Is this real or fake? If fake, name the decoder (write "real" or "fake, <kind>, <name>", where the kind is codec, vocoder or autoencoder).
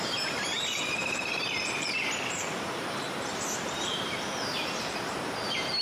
fake, vocoder, BigVGAN v2